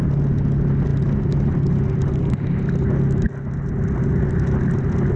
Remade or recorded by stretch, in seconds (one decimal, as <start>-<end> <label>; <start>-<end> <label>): 0.0-5.2 recorded